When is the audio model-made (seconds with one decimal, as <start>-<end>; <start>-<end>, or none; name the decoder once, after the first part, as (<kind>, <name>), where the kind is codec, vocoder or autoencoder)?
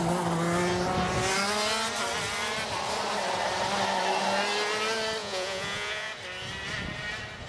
5.2-6.1 (vocoder, Vocos)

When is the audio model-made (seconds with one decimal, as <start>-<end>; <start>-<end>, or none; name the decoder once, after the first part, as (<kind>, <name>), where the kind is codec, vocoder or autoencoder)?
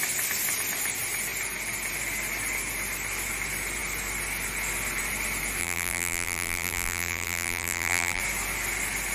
5.6-8.2 (vocoder, BigVGAN v2)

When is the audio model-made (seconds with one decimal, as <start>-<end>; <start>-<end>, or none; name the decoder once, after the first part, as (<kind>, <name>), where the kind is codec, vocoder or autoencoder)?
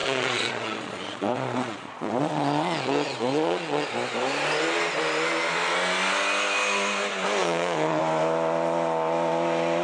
0.0-3.9 (vocoder, Vocos); 7.4-8.0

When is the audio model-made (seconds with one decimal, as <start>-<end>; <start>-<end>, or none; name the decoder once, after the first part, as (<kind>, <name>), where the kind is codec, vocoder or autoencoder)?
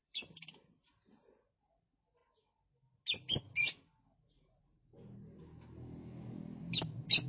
0.0-1.3 (vocoder, BigVGAN v2)